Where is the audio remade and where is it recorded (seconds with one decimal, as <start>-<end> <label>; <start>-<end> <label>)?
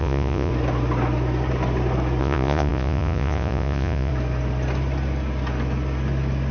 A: 0.0-0.5 remade; 0.5-2.2 recorded; 2.2-4.1 remade; 4.1-6.5 recorded